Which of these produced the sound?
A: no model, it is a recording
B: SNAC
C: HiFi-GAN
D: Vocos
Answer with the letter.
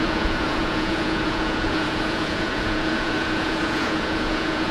D